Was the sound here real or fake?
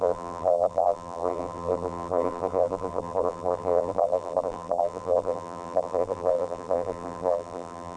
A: fake